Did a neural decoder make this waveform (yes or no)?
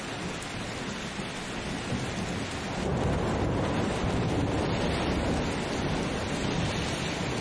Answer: no